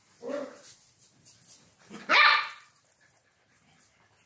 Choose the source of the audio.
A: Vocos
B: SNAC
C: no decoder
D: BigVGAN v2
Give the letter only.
C